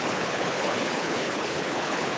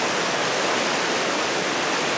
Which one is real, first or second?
second